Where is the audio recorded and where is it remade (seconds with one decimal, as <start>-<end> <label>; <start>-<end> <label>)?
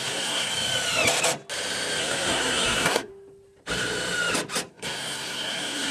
0.0-0.5 remade; 0.5-2.0 recorded; 2.0-3.1 remade; 3.1-4.7 recorded; 4.7-5.9 remade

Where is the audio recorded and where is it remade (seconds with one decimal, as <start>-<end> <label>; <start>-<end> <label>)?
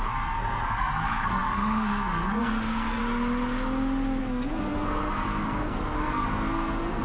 0.0-3.0 remade; 3.0-4.2 recorded; 4.2-7.0 remade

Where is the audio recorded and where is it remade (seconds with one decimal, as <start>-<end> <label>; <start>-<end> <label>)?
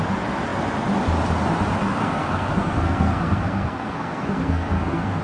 0.0-1.8 recorded; 1.8-5.2 remade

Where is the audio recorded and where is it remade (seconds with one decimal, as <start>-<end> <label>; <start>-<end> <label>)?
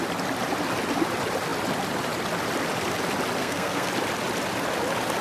0.0-3.4 recorded; 3.4-3.9 remade; 3.9-5.2 recorded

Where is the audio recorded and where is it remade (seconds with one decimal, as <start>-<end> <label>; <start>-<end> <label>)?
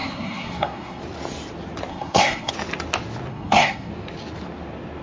0.0-1.0 remade; 1.0-1.9 recorded; 1.9-2.5 remade; 2.5-3.3 recorded; 3.3-3.9 remade; 3.9-5.0 recorded